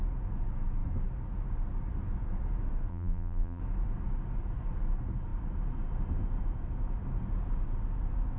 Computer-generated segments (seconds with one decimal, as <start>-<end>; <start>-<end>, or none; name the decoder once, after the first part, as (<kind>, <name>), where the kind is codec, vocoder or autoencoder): 2.9-3.6 (vocoder, BigVGAN v2)